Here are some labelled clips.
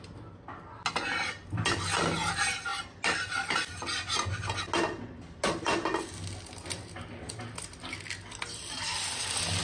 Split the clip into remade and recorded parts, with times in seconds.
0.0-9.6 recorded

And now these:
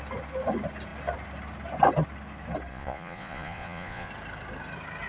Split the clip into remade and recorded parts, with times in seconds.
0.0-2.7 recorded; 2.7-4.1 remade; 4.1-5.1 recorded